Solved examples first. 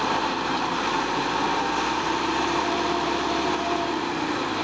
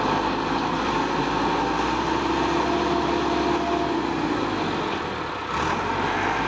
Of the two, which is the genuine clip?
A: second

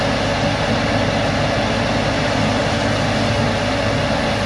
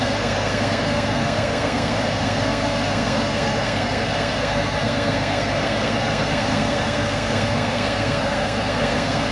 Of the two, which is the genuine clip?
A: first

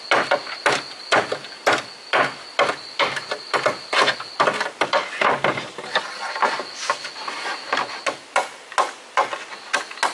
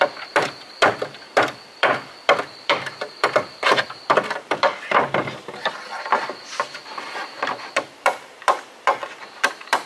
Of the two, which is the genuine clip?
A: first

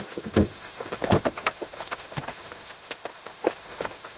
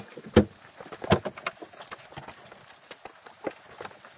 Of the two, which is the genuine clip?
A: second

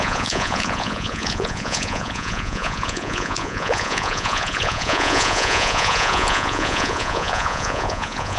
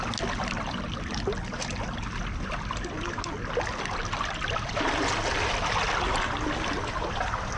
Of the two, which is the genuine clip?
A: second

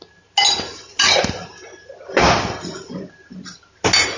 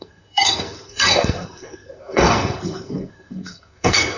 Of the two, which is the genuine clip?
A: first